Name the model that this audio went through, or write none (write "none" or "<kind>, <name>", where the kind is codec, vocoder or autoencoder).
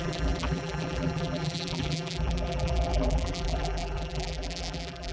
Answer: vocoder, BigVGAN v2